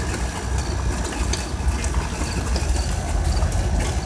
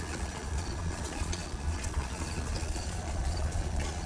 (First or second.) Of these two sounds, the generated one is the second